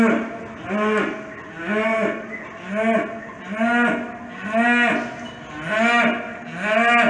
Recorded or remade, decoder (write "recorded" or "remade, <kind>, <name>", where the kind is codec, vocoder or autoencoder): recorded